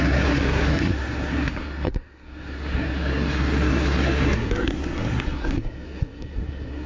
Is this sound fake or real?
fake